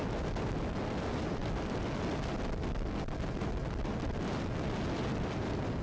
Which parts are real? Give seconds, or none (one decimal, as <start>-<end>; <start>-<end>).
0.0-5.8